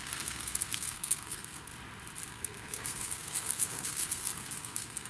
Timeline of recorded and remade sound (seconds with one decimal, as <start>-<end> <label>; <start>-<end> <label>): 0.0-1.7 remade; 1.7-2.3 recorded; 2.3-5.1 remade